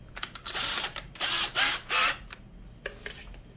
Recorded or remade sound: recorded